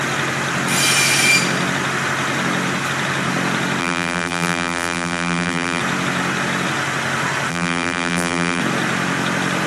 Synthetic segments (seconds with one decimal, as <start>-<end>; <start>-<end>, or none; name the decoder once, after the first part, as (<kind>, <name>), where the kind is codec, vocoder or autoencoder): 3.8-5.8 (vocoder, BigVGAN v2); 7.5-8.6